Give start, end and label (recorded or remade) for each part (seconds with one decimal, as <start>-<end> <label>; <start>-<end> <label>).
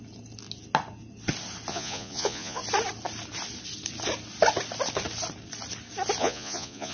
0.0-1.7 recorded; 1.7-2.6 remade; 2.6-6.2 recorded; 6.2-6.9 remade